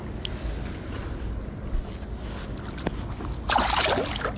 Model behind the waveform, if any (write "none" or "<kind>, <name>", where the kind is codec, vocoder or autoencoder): none